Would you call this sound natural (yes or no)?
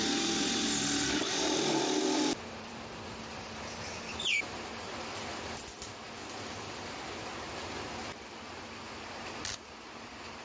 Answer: no